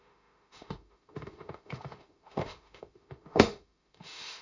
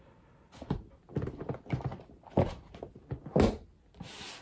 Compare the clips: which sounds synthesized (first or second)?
first